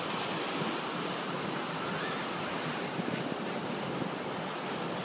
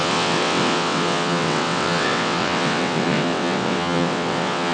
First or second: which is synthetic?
second